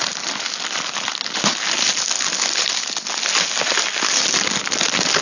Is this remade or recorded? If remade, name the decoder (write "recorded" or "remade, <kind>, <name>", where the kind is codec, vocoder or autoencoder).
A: recorded